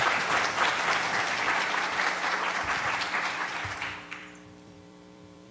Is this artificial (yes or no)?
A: yes